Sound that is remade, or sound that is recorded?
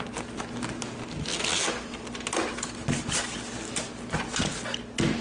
recorded